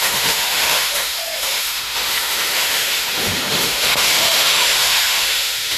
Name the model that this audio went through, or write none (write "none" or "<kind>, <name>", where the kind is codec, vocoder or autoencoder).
autoencoder, DAC-VAE